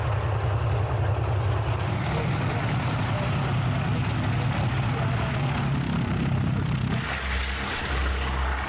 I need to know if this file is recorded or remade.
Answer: recorded